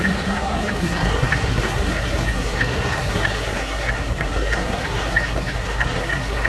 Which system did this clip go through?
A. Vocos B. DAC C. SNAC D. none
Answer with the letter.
C